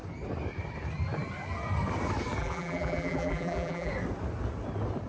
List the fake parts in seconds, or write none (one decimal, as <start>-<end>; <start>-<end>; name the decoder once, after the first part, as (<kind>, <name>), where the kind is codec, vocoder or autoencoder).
2.4-3.9 (vocoder, BigVGAN v2)